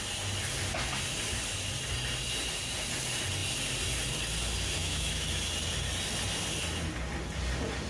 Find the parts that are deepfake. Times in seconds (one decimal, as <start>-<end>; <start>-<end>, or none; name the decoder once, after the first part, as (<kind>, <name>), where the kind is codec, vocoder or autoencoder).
4.8-5.4 (autoencoder, DAC-VAE)